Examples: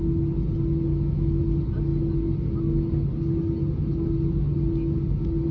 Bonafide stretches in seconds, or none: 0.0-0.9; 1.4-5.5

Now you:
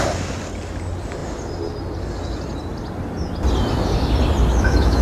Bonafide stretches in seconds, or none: 0.0-4.5

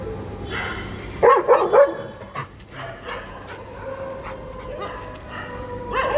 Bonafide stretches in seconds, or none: 0.0-6.2

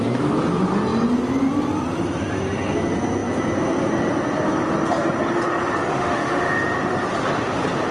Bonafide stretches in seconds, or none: 0.0-5.9; 6.5-7.9

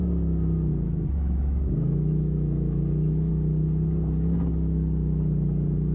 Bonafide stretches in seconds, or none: 0.0-0.7; 3.3-5.9